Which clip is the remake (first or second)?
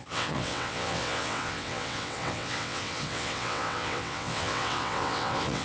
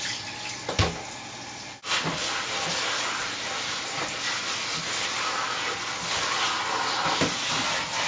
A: first